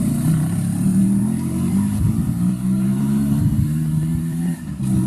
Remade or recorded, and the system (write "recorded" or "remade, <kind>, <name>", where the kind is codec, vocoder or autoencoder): remade, vocoder, BigVGAN v2